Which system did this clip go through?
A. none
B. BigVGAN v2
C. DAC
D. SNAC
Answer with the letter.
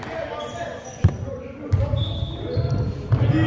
A